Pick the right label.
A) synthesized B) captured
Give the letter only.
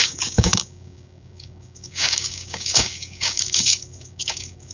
A